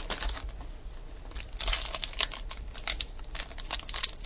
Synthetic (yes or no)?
no